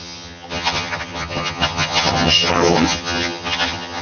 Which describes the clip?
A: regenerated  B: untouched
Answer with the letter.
A